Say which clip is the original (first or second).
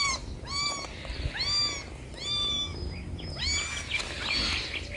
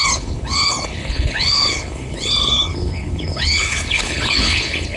first